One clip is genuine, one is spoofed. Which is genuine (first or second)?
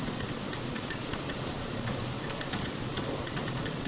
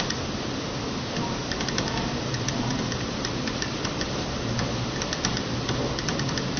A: second